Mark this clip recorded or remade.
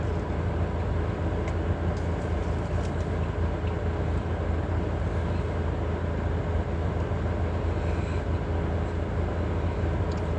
recorded